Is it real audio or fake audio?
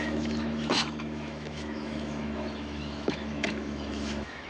fake